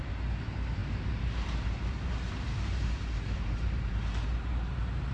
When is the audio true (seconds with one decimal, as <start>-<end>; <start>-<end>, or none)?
0.0-0.8; 3.9-4.3